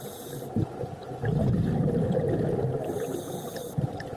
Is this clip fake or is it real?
real